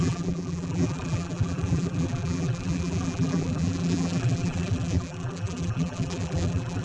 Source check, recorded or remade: remade